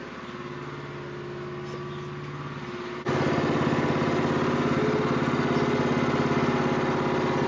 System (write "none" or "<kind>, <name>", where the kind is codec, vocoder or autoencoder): none